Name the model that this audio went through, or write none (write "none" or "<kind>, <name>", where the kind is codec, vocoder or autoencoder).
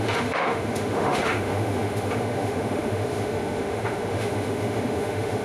autoencoder, DAC-VAE